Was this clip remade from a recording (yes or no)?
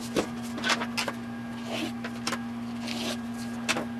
no